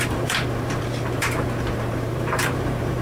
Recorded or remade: remade